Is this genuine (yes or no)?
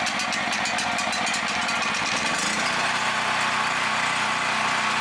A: yes